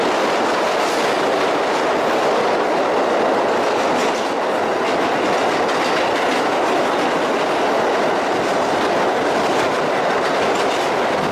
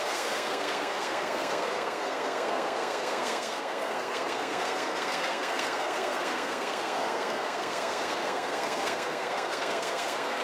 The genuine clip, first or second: first